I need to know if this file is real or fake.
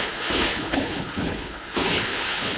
fake